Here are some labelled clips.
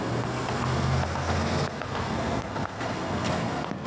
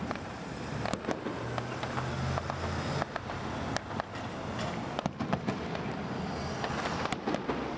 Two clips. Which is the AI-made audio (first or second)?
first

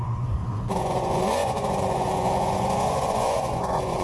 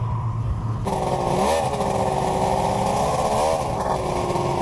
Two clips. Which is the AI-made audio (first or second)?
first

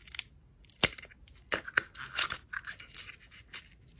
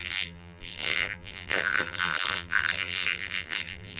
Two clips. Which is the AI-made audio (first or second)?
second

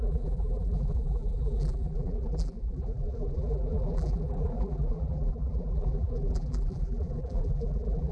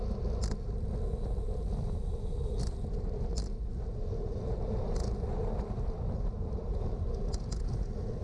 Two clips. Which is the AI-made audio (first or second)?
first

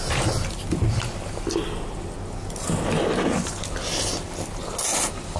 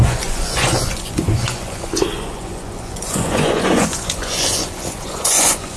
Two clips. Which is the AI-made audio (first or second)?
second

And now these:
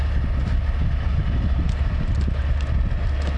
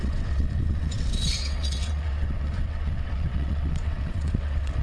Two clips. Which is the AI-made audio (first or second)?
second